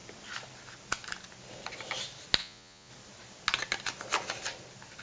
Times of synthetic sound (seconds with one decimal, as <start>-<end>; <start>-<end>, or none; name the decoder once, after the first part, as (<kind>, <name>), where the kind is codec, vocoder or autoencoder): 2.4-2.9 (vocoder, Vocos)